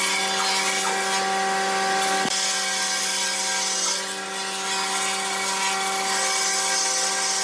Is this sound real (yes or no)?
yes